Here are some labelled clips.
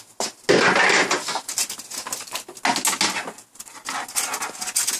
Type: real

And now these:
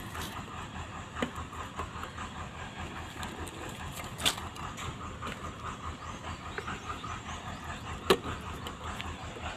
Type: real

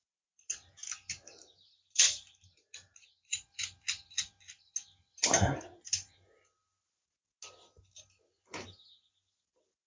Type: real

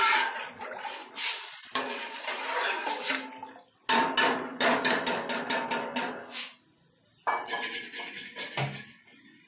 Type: real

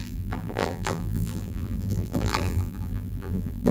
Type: fake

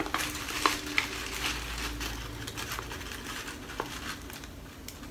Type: real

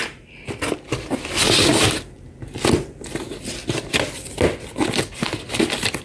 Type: real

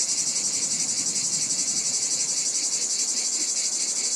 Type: real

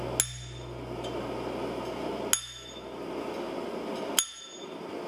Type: real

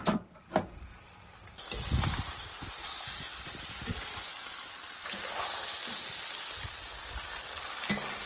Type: real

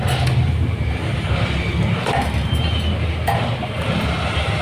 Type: real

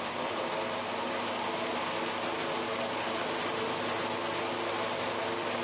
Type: real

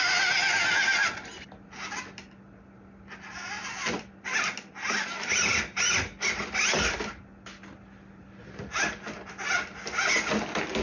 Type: real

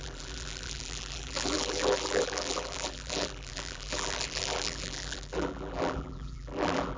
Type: fake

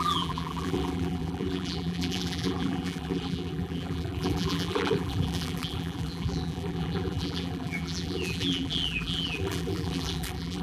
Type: fake